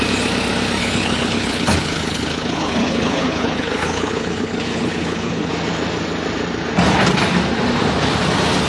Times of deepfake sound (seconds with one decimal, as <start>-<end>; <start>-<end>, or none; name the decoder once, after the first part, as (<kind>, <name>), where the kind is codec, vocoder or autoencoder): 0.8-5.5 (codec, HILCodec)